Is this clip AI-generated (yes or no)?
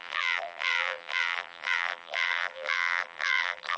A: yes